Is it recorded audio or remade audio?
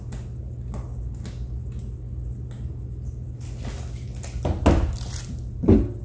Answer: recorded